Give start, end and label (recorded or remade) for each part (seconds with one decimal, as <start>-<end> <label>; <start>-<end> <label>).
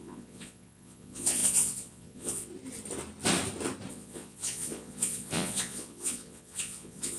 0.0-2.5 remade; 2.5-3.9 recorded; 3.9-7.2 remade